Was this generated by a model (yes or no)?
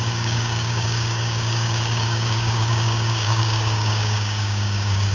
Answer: yes